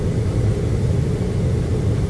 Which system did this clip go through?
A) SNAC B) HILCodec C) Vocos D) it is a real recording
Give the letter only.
D